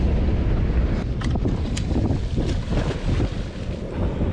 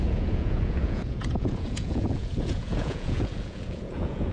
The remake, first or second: second